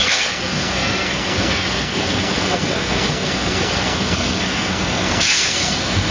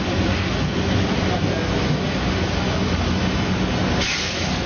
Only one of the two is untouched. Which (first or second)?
second